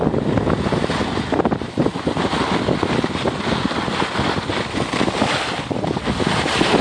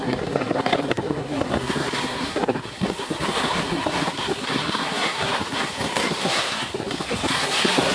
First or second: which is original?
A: first